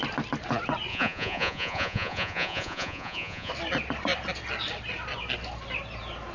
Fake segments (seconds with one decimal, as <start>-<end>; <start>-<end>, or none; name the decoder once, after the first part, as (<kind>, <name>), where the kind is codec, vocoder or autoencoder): 0.9-3.5 (vocoder, Vocos)